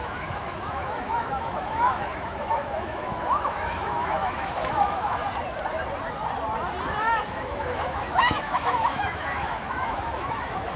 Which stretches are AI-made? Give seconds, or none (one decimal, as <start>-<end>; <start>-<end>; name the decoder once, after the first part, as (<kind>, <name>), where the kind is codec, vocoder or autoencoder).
0.0-5.2 (autoencoder, DAC-VAE); 7.0-10.8